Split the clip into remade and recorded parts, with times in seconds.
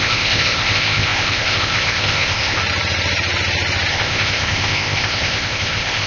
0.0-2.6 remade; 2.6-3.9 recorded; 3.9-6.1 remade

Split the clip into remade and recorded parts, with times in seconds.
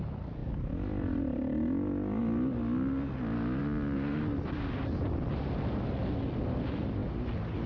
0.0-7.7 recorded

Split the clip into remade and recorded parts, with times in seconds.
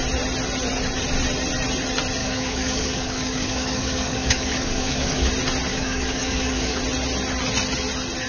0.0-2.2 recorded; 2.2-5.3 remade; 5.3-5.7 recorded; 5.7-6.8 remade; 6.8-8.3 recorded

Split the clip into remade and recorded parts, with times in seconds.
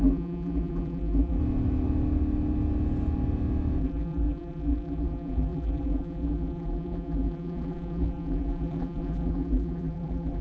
0.0-1.4 remade; 1.4-3.8 recorded; 3.8-10.4 remade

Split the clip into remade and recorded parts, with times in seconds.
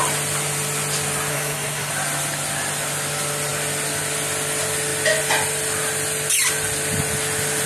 0.0-1.3 recorded; 1.3-1.9 remade; 1.9-7.7 recorded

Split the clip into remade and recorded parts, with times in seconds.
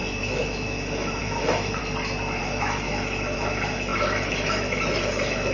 0.0-1.8 remade; 1.8-2.4 recorded; 2.4-5.5 remade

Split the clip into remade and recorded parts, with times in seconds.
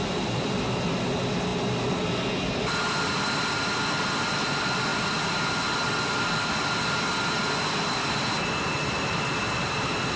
0.0-10.2 recorded